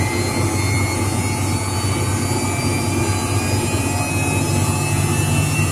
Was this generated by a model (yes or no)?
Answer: no